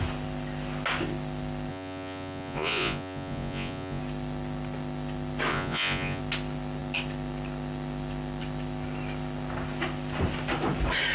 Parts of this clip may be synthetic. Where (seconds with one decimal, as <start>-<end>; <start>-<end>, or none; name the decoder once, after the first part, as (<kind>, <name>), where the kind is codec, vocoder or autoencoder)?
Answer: 1.7-4.0 (vocoder, Vocos); 5.5-6.2